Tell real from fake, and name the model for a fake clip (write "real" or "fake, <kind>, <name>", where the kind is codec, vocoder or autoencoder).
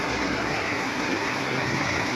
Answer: fake, codec, SNAC